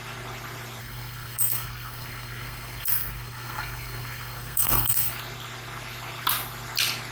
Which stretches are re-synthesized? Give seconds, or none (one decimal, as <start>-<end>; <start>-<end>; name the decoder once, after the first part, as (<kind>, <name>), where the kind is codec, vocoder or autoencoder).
0.8-5.1 (codec, SNAC)